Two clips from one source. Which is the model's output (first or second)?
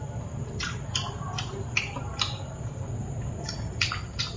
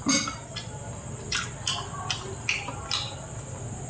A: first